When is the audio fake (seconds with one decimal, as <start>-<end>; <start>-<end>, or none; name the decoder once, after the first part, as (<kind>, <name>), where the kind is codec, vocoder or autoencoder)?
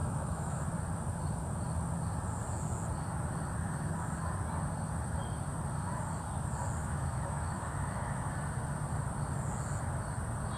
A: 0.0-0.6 (autoencoder, DAC-VAE); 6.8-8.3